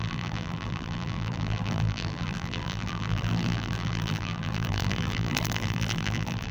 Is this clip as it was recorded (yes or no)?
no